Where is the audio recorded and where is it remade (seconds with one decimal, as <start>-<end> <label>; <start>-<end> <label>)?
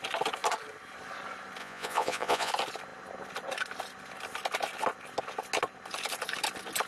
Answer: 0.0-1.6 recorded; 1.6-2.5 remade; 2.5-6.9 recorded